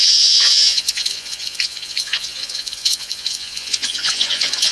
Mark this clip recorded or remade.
remade